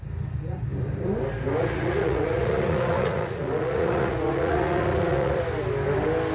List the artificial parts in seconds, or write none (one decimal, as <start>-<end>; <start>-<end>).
1.6-5.4